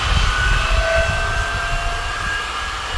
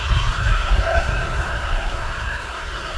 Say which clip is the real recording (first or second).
first